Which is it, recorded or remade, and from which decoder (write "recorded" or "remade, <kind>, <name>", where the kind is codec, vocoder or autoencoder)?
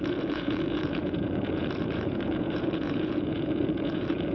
remade, vocoder, Vocos